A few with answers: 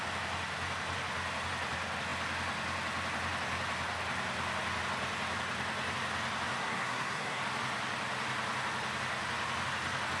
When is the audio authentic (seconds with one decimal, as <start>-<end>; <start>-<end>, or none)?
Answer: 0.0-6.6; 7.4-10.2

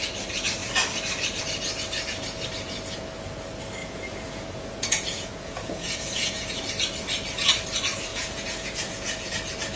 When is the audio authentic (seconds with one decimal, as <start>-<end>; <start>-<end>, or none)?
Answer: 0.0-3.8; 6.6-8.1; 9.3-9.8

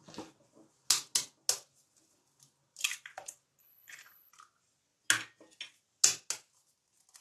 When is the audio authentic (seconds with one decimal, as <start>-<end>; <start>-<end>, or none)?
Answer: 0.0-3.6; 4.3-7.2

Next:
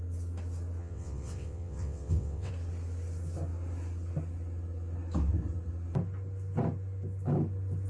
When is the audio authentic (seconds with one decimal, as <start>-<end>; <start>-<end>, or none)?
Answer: 0.0-0.8; 2.5-7.9